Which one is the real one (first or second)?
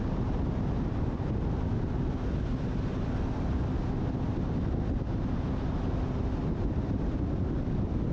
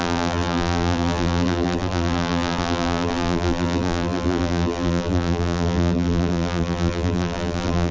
first